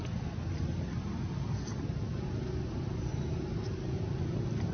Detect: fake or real real